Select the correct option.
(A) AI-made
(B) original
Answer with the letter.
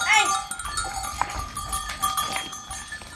B